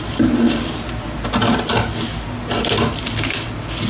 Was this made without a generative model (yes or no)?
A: yes